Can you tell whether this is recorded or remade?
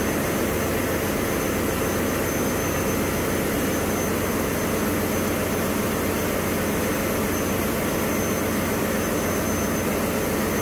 recorded